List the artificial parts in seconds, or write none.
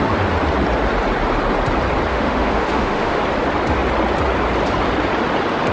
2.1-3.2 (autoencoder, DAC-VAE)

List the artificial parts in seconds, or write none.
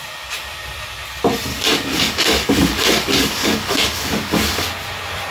1.5-4.7 (codec, DAC)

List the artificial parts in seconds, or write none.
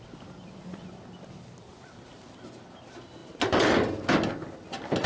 none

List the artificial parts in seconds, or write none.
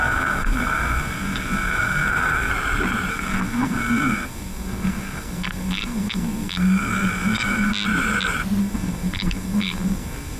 0.0-2.5 (codec, SNAC); 3.1-7.7; 8.6-10.4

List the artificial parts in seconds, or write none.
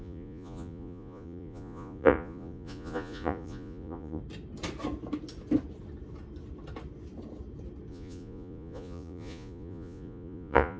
0.0-4.2 (vocoder, Vocos); 7.9-10.8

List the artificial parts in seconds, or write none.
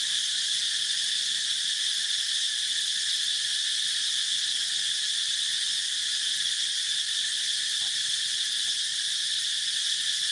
none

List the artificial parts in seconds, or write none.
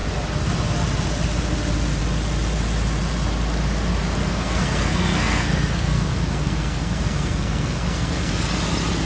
4.2-8.3 (codec, SNAC)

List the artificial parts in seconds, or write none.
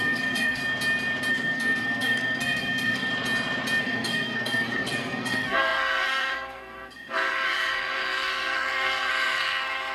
0.0-0.6 (codec, SNAC); 1.3-3.1; 3.8-9.9